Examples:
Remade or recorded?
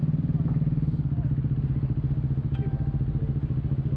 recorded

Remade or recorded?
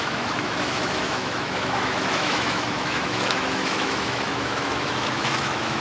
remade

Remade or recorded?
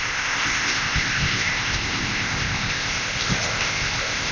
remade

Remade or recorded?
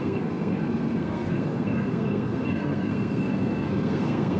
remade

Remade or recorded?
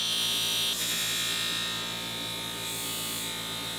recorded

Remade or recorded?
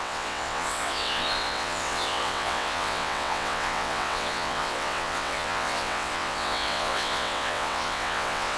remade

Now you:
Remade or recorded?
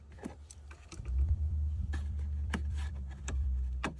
remade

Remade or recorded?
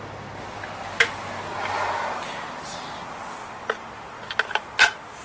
recorded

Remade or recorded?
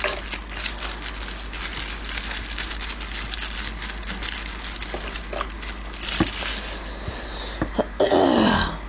recorded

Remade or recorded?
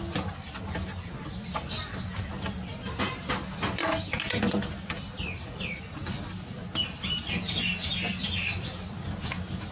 recorded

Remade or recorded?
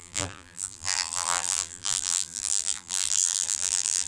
remade